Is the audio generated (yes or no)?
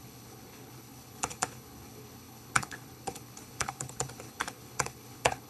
yes